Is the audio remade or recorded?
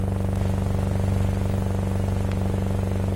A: recorded